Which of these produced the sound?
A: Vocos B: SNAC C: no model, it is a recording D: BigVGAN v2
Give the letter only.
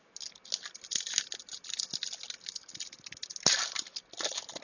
C